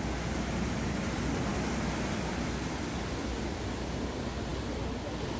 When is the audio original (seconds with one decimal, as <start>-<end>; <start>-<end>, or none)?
0.0-5.4